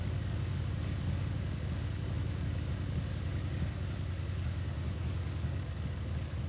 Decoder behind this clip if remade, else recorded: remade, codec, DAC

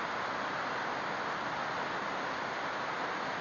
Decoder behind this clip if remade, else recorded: recorded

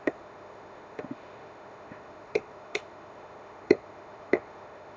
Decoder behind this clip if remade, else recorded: remade, autoencoder, DAC-VAE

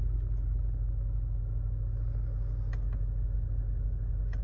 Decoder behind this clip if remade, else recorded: recorded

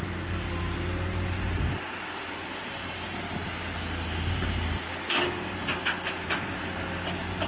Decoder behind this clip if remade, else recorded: recorded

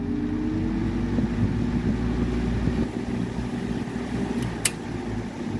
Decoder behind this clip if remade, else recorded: recorded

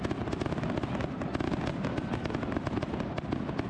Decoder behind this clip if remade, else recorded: recorded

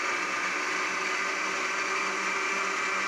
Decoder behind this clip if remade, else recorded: recorded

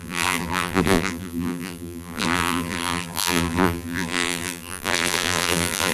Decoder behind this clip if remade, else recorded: remade, vocoder, BigVGAN v2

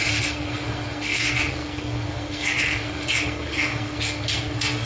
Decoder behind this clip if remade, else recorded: remade, codec, SNAC